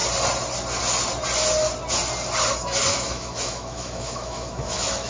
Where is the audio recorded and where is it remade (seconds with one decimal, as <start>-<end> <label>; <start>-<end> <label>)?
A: 0.0-2.9 recorded; 2.9-5.1 remade